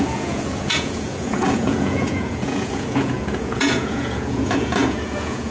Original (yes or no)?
no